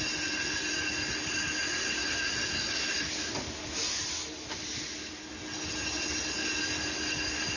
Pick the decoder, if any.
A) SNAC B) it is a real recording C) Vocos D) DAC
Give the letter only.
B